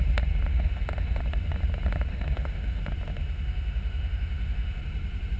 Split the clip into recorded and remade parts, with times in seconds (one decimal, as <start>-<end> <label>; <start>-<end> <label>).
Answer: 0.0-0.5 recorded; 0.5-1.2 remade; 1.2-2.1 recorded; 2.1-2.8 remade; 2.8-3.2 recorded; 3.2-4.8 remade; 4.8-5.4 recorded